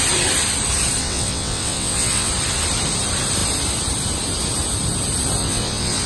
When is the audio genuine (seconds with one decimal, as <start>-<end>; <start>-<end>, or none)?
0.0-1.0; 2.3-5.4